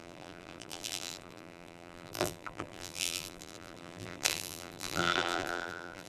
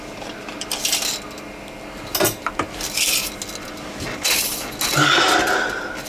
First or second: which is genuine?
second